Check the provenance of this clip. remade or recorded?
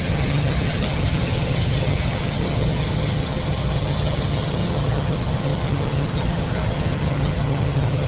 remade